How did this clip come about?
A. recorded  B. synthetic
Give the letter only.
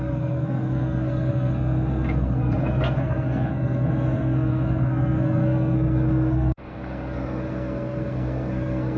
B